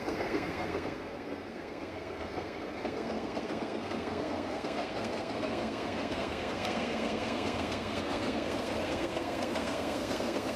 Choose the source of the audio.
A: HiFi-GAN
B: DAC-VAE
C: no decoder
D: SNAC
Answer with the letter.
D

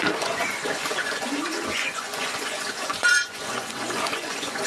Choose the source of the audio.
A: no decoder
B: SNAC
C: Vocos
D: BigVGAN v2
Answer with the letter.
C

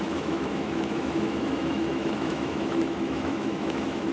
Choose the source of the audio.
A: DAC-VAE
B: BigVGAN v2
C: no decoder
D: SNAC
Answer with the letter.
A